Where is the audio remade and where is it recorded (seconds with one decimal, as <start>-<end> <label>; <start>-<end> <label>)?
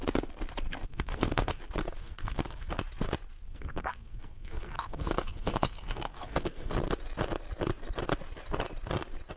0.0-0.9 recorded; 0.9-1.6 remade; 1.6-2.0 recorded; 2.0-2.7 remade; 2.7-3.5 recorded; 3.5-6.7 remade; 6.7-9.4 recorded